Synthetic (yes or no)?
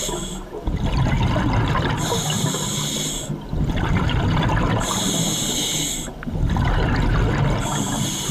no